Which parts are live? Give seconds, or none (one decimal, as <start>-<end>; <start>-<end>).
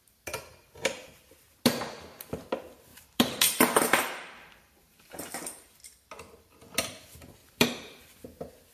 0.0-0.5; 1.1-2.9; 5.8-7.4; 8.1-8.7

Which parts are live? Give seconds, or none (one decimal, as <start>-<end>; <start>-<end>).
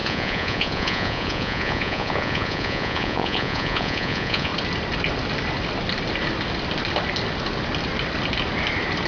4.5-9.1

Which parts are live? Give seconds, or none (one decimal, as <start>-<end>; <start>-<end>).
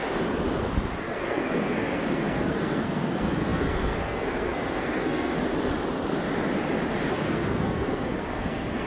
0.0-1.0; 5.4-7.1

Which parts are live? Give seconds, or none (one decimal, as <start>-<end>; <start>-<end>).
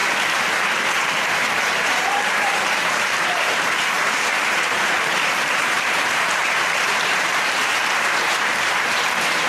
0.0-0.8